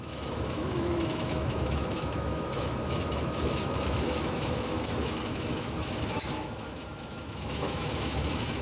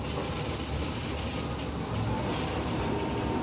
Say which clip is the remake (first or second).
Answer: first